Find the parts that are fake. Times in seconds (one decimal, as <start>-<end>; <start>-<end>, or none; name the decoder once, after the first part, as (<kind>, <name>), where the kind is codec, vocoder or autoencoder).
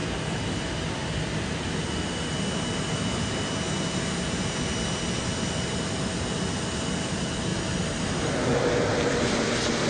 none